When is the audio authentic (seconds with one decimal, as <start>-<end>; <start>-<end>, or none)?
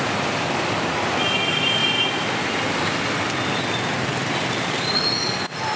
0.0-5.8